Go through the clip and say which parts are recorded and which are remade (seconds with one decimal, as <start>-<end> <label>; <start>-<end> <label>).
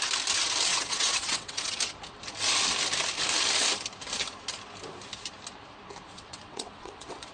0.0-0.7 recorded; 0.7-1.8 remade; 1.8-6.1 recorded; 6.1-7.3 remade